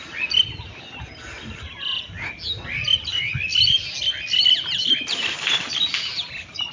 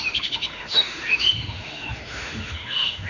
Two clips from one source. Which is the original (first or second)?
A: first